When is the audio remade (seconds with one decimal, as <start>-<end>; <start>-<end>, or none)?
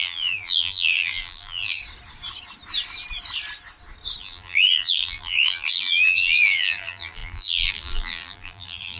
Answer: 0.0-1.8; 4.2-9.0